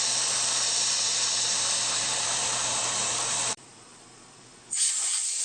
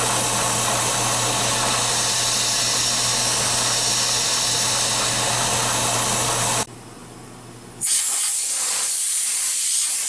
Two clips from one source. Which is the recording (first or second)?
second